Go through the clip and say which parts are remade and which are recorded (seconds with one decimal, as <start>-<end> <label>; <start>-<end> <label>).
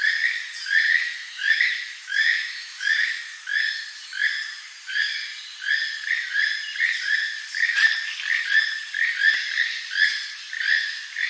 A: 0.0-1.2 recorded; 1.2-3.2 remade; 3.2-11.3 recorded